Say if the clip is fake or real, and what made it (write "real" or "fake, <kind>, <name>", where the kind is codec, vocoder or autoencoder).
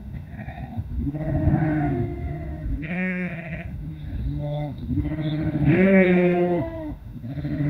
fake, autoencoder, DAC-VAE